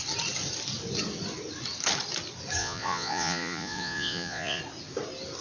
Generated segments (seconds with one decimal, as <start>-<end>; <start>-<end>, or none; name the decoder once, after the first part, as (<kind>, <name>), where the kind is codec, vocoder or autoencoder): 2.6-4.6 (vocoder, Vocos)